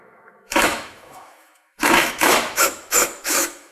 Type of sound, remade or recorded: remade